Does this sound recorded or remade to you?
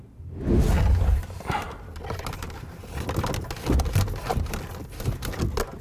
recorded